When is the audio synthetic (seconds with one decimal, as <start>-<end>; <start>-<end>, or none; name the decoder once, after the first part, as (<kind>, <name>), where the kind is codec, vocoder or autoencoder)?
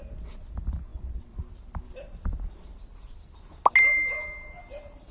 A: none